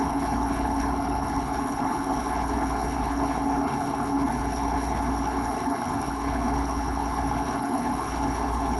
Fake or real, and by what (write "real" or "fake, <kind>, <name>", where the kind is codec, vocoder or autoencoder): fake, codec, HILCodec